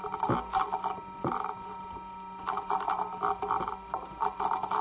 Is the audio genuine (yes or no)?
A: yes